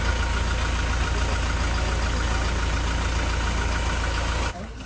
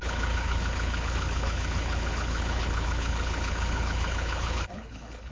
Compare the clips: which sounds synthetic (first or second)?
second